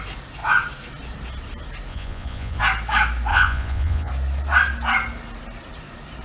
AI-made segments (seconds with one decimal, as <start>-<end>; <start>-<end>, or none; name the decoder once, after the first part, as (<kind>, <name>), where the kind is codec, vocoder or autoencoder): 1.9-2.6 (vocoder, Vocos); 3.3-4.1